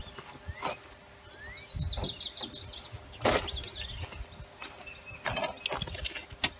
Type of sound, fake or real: real